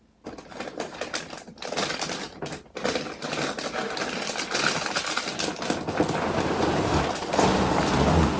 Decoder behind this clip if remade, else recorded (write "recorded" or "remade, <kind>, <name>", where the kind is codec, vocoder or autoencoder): recorded